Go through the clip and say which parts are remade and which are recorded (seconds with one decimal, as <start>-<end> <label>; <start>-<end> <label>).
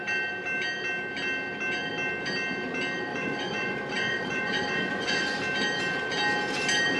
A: 0.0-3.1 recorded; 3.1-5.4 remade; 5.4-7.0 recorded